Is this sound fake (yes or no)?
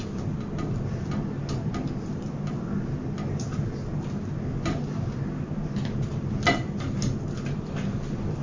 no